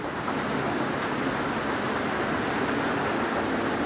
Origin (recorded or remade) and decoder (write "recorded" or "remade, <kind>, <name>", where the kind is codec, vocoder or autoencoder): recorded